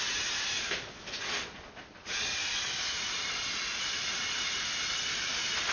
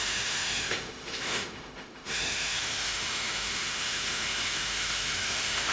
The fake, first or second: second